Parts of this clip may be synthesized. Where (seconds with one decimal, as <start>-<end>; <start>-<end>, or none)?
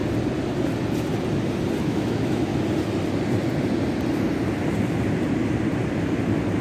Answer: 1.8-2.5